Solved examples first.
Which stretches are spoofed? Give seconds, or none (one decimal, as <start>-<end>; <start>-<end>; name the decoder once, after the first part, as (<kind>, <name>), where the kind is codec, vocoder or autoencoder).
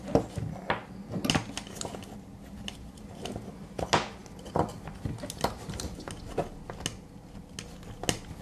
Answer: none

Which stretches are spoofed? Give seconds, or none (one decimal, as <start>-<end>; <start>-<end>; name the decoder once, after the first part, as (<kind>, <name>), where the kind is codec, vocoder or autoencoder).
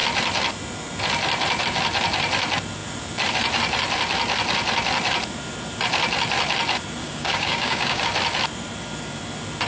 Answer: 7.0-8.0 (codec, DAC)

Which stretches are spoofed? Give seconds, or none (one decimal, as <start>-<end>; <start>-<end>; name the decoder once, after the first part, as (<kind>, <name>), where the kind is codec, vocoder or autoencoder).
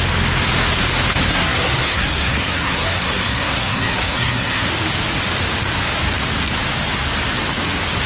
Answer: 1.3-4.7 (codec, SNAC)